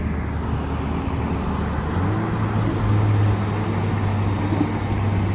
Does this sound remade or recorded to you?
recorded